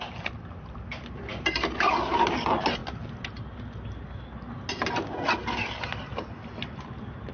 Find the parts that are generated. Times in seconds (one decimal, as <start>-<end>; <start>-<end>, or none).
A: none